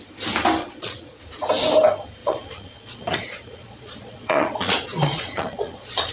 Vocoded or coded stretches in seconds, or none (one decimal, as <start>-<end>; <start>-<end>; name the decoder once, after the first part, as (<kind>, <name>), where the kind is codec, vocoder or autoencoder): 0.6-1.2 (vocoder, Vocos); 2.2-6.1